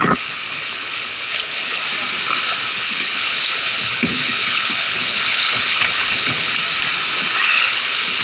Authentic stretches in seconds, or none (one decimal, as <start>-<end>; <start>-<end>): 1.8-2.7; 6.5-7.4